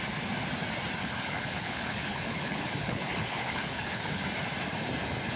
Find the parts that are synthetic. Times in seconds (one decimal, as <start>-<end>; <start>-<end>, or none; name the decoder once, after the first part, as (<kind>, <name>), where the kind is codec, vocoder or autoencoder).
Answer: 1.0-4.2 (codec, HILCodec)

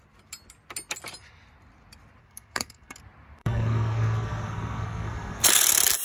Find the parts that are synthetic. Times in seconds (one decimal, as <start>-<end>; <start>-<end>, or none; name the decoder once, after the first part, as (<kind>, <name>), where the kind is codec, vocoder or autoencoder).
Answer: 2.2-3.0 (codec, SNAC); 3.4-5.6

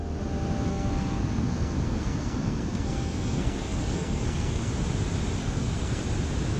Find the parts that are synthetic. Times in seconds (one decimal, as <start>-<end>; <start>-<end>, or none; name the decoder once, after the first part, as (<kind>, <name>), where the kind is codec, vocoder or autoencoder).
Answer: 0.7-4.7 (codec, SNAC); 5.4-6.0

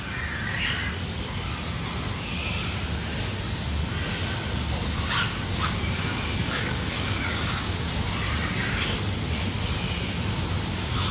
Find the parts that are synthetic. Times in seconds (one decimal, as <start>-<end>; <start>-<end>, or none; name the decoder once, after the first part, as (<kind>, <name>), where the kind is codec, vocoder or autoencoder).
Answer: 5.3-7.9 (codec, DAC)